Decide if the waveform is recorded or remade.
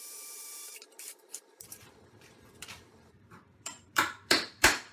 remade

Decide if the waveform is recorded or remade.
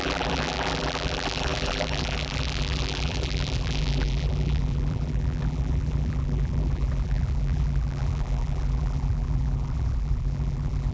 remade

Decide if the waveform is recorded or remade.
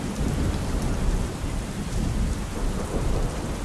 remade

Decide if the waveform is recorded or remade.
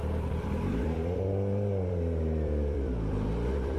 remade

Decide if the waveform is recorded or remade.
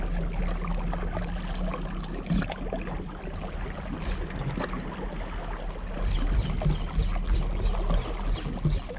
recorded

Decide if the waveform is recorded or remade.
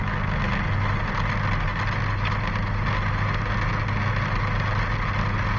recorded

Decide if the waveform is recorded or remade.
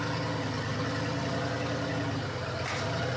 recorded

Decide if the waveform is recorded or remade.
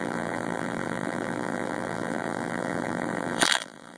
remade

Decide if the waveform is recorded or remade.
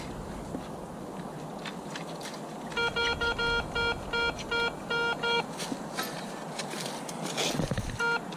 recorded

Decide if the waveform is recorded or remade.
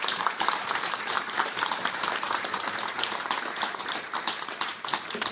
remade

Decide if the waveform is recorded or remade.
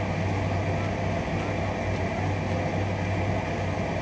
recorded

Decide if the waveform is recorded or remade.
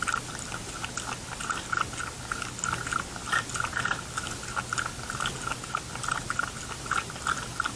recorded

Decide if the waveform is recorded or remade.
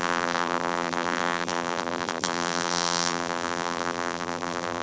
remade